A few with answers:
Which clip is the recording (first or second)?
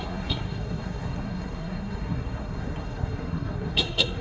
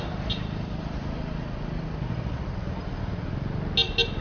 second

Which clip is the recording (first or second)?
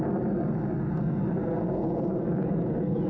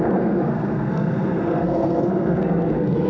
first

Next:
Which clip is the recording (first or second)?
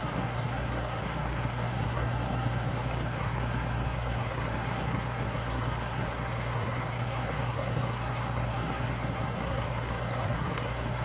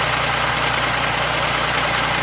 second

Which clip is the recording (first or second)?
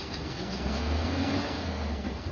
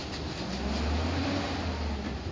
second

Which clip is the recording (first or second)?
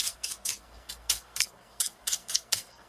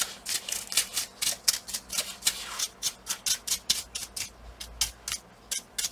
second